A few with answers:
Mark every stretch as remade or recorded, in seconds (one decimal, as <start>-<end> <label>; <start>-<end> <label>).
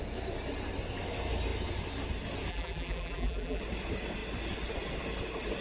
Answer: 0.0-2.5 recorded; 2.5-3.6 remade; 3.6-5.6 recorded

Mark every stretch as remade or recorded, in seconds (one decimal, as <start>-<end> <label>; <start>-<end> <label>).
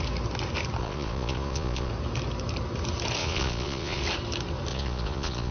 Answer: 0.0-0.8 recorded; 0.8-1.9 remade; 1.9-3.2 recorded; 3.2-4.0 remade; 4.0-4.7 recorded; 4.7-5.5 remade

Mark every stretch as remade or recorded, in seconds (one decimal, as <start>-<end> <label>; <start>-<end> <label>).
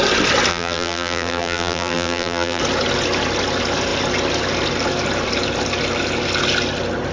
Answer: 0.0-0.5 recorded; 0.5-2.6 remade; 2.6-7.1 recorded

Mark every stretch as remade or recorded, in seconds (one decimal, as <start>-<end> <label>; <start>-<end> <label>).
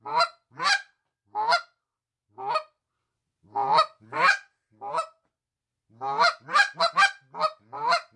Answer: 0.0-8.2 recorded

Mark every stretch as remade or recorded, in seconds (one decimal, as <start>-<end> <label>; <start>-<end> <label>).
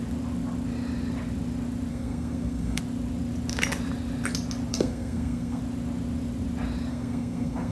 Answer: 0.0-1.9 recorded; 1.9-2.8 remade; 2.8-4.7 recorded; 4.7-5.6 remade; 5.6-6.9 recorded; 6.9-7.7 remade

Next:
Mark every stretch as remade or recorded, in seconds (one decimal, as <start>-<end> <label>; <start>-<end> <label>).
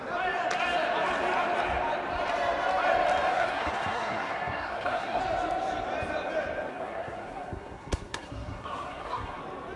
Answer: 0.0-3.3 recorded; 3.3-5.2 remade; 5.2-6.7 recorded; 6.7-9.4 remade; 9.4-9.8 recorded